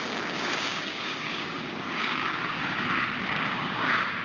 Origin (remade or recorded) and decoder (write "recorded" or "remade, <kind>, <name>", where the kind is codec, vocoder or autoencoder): remade, codec, DAC